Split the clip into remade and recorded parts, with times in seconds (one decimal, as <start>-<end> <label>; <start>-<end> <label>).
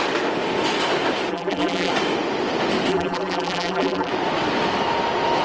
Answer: 0.0-1.3 recorded; 1.3-1.9 remade; 1.9-2.9 recorded; 2.9-4.1 remade; 4.1-5.4 recorded